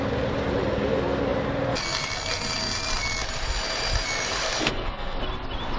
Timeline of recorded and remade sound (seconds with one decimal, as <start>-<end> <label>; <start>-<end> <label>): 0.0-4.4 recorded; 4.4-5.2 remade; 5.2-5.8 recorded